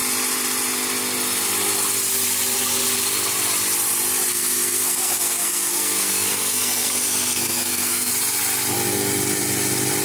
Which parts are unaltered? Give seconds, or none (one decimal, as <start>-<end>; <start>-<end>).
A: 0.0-4.3; 8.1-10.0